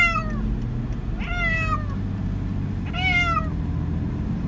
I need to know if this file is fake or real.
real